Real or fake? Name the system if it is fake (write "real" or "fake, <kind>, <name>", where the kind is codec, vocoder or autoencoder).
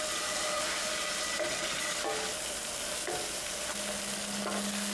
real